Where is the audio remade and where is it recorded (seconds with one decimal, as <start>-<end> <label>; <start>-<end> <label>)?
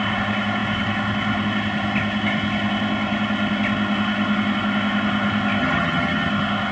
0.0-5.6 recorded; 5.6-6.3 remade; 6.3-6.7 recorded